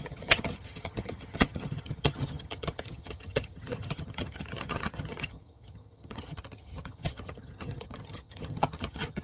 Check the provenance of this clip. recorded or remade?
remade